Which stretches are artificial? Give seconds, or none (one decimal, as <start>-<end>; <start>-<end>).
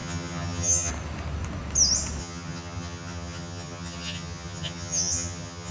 0.0-0.9; 2.2-5.7